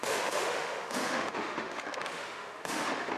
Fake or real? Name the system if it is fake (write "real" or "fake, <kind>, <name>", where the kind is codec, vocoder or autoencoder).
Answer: fake, autoencoder, DAC-VAE